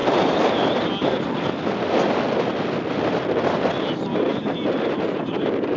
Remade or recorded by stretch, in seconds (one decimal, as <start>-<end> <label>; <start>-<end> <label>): 0.0-5.8 recorded